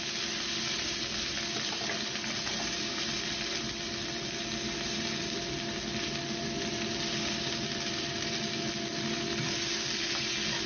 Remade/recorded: recorded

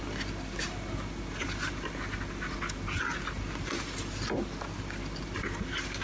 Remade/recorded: recorded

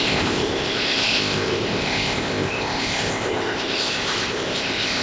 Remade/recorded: remade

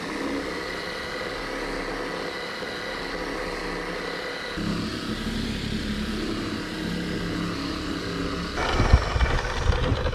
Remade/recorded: recorded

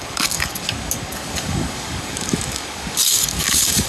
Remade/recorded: remade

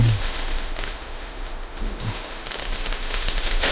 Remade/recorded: remade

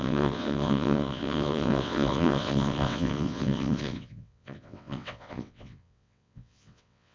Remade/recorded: remade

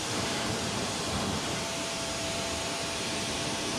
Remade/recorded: remade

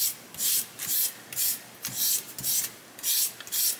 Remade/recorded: recorded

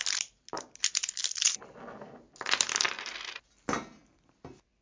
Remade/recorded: recorded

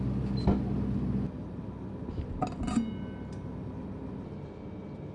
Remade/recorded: recorded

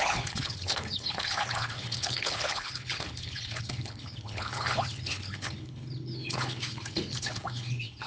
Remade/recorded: remade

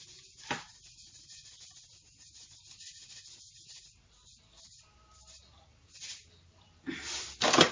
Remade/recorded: recorded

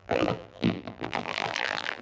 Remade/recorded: remade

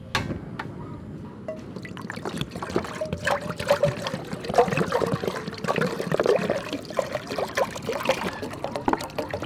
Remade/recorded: recorded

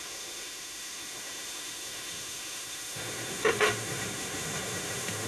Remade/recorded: remade